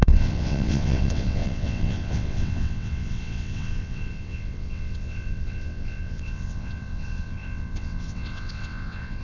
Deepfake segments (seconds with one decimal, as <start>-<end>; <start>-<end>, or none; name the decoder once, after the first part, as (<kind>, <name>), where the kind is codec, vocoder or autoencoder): 0.0-9.2 (vocoder, WaveNeXt)